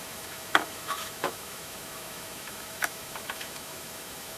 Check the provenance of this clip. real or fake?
fake